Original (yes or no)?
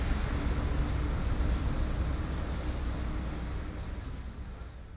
yes